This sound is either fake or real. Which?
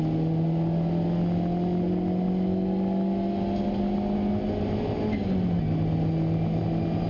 real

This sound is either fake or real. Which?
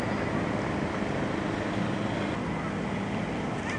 real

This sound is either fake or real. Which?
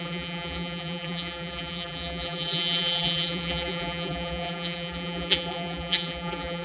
fake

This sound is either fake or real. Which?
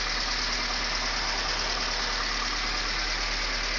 real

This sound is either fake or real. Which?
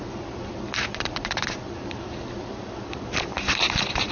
fake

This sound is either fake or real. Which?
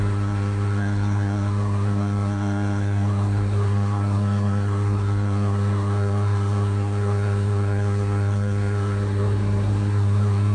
fake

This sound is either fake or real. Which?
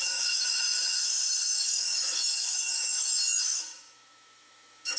fake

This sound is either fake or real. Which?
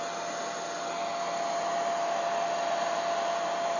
real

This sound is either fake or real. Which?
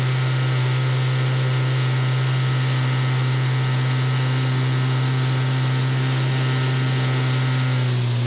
real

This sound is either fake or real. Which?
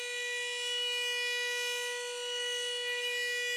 real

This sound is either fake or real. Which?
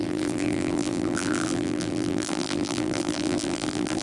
fake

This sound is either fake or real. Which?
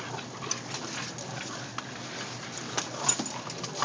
real